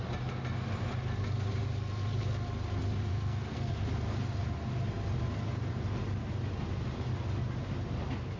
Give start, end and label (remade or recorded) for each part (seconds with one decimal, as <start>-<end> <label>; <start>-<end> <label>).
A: 0.0-3.1 recorded; 3.1-3.7 remade; 3.7-8.4 recorded